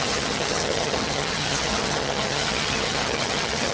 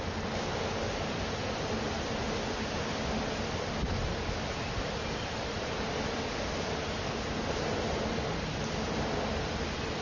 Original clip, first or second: second